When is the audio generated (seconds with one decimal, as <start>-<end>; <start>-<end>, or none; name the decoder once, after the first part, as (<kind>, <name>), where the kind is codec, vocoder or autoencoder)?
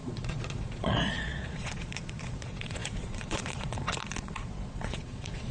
0.0-5.5 (vocoder, Vocos)